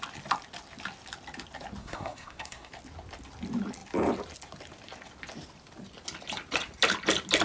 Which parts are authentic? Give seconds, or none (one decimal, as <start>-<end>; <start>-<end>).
0.0-1.8; 2.7-7.4